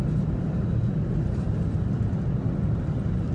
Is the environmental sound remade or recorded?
recorded